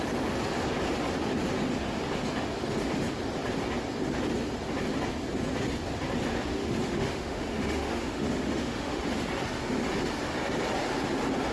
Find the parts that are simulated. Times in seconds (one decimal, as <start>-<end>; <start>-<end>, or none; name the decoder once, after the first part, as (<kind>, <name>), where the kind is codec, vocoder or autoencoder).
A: 6.6-9.0 (autoencoder, DAC-VAE)